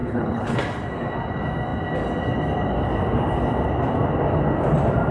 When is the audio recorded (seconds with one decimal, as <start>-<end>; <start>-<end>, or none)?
0.6-5.1